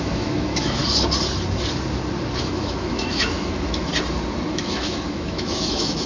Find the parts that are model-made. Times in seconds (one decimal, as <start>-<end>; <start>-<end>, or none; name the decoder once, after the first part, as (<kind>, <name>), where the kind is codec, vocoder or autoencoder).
0.0-0.8 (autoencoder, DAC-VAE); 2.4-3.9; 4.5-6.1